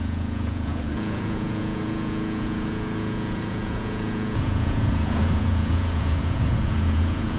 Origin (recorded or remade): remade